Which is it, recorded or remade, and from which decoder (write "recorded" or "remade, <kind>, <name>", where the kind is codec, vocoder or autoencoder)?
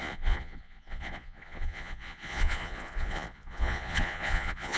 remade, vocoder, Vocos